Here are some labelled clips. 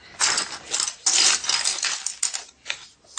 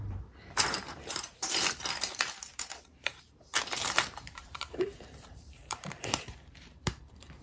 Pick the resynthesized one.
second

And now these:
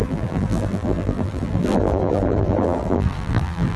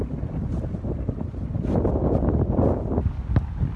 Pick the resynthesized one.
first